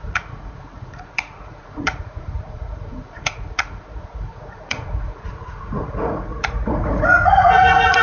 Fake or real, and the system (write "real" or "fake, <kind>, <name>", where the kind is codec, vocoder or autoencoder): fake, vocoder, Vocos